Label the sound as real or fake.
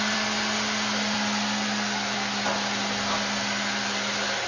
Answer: real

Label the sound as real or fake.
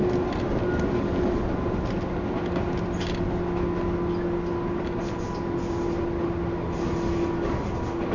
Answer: real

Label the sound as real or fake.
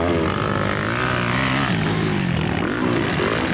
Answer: real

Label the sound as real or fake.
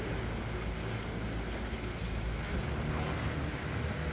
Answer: real